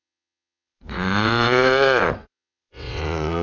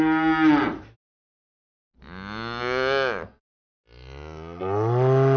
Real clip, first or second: second